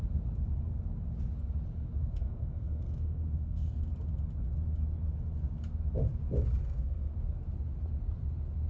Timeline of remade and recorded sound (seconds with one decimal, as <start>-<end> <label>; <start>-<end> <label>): 0.0-2.0 recorded; 2.0-3.8 remade; 3.8-6.6 recorded; 6.6-7.1 remade; 7.1-8.7 recorded